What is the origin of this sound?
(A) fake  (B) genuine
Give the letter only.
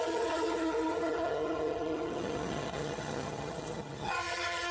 A